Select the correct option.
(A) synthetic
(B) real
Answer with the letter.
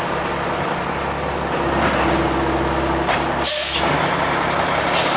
B